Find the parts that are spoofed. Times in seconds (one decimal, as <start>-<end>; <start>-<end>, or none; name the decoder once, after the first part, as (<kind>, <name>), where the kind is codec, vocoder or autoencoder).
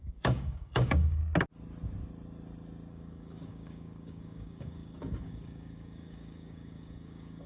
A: 0.0-1.2 (codec, DAC); 2.9-7.5